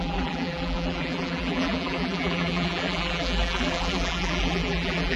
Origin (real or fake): fake